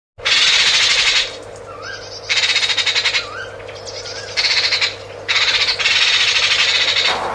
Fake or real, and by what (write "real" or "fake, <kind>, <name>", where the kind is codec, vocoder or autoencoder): real